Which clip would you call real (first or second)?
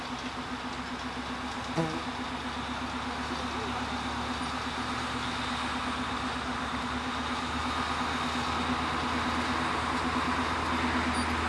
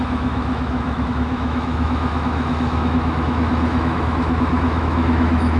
first